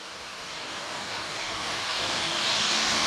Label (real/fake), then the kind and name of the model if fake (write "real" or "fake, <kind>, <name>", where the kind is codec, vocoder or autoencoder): fake, codec, DAC